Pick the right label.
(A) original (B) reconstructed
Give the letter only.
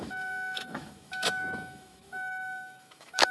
B